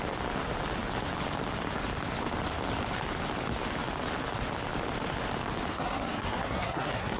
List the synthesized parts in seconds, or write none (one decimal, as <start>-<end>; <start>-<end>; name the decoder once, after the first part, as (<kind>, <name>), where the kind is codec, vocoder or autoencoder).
5.7-7.2 (codec, SNAC)